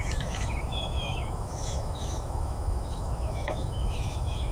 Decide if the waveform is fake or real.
fake